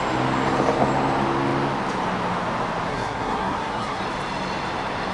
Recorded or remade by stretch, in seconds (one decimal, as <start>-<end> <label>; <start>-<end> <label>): 0.0-2.9 recorded; 2.9-4.0 remade; 4.0-5.1 recorded